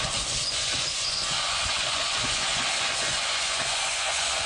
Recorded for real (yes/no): no